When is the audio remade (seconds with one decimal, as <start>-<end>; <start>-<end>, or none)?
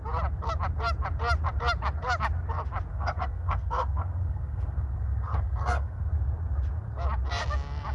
2.9-6.1